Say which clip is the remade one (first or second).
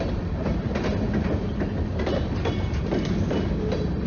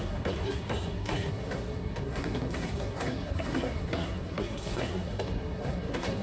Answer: second